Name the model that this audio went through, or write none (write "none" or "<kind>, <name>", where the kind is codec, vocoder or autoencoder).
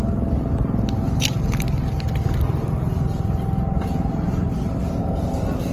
none